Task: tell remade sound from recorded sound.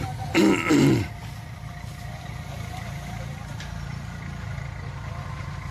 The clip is recorded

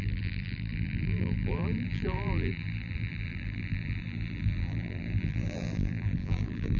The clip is remade